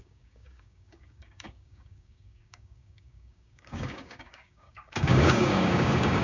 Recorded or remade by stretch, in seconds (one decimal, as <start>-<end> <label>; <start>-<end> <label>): 0.0-6.2 remade